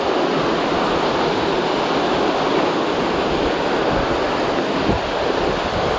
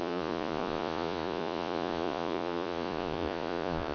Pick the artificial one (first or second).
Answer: second